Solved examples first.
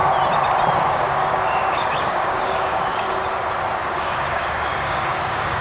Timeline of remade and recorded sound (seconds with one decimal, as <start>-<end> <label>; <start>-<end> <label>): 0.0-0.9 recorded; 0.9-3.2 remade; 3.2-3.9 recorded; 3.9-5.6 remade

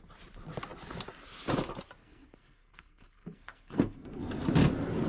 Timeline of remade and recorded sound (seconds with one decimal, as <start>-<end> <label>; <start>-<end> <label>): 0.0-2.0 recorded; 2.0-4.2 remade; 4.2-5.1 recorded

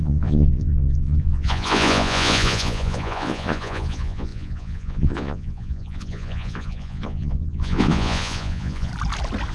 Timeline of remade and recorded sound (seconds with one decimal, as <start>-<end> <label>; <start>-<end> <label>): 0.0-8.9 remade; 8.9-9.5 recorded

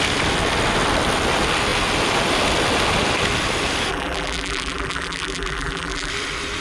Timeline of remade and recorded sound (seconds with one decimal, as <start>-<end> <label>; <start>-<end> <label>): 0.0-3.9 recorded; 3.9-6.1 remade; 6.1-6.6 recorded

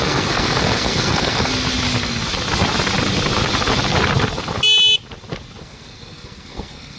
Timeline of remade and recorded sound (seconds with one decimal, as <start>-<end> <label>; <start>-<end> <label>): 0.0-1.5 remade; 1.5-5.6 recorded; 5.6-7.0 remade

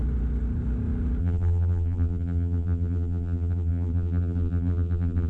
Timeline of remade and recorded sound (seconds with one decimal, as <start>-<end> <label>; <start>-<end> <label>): 0.0-1.2 recorded; 1.2-5.3 remade